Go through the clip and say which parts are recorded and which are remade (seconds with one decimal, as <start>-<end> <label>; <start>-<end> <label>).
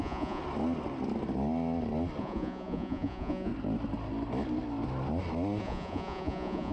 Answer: 0.0-0.4 remade; 0.4-2.2 recorded; 2.2-3.5 remade; 3.5-5.6 recorded; 5.6-6.7 remade